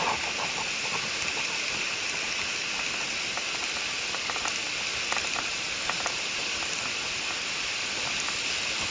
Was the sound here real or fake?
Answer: real